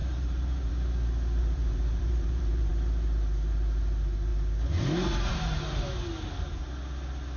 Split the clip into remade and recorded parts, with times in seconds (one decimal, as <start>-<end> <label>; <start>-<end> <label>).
0.0-0.7 remade; 0.7-1.4 recorded; 1.4-2.7 remade; 2.7-7.4 recorded